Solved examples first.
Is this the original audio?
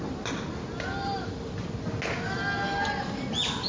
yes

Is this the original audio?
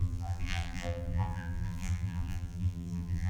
no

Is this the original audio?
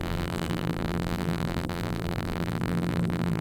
no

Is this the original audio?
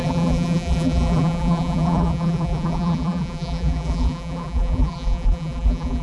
no